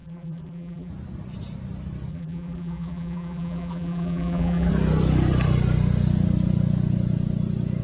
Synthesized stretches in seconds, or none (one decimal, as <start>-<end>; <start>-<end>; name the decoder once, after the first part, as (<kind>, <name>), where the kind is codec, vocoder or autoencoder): 0.0-0.9 (vocoder, BigVGAN v2); 2.1-4.7

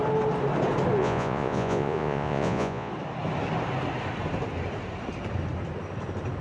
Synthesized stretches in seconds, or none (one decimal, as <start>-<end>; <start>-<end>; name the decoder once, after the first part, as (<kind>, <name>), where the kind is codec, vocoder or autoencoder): 1.0-2.9 (vocoder, Vocos)